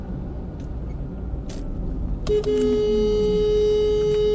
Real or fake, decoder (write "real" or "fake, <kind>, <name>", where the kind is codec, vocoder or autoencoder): real